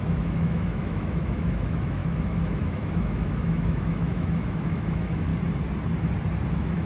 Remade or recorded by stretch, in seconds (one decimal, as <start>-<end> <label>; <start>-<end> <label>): 0.0-5.3 remade; 5.3-6.5 recorded; 6.5-6.9 remade